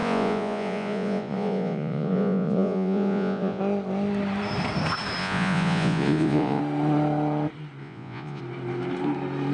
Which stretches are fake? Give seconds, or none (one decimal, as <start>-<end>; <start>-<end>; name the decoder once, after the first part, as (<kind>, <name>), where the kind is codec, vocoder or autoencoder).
0.0-3.6 (vocoder, Vocos); 5.2-6.6; 7.8-8.4

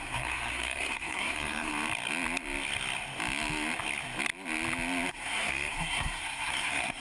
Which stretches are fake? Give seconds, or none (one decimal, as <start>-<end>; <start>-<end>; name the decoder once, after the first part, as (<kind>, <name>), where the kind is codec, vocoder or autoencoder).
0.0-1.7 (codec, SNAC); 5.1-7.0

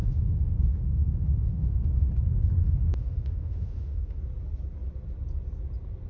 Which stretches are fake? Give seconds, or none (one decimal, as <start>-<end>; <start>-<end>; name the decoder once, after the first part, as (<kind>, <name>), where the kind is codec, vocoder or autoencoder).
0.0-2.1 (autoencoder, DAC-VAE); 2.6-4.2

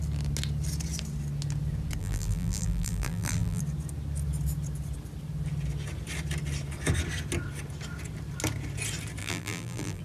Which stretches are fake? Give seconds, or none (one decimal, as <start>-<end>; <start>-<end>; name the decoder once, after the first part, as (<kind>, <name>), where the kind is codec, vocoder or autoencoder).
2.0-3.6 (vocoder, BigVGAN v2); 9.2-10.0

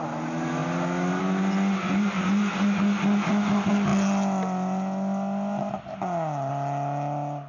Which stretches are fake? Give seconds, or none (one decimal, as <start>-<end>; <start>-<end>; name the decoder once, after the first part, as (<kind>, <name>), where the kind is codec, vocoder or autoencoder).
none

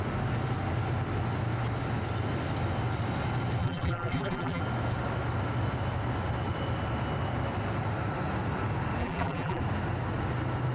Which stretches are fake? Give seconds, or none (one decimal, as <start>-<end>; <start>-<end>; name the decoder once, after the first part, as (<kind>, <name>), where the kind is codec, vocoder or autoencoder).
3.6-4.6 (vocoder, BigVGAN v2); 9.0-9.6